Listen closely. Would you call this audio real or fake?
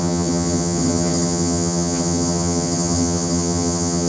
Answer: fake